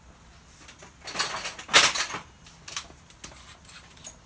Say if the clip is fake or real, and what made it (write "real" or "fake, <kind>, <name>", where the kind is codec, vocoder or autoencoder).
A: real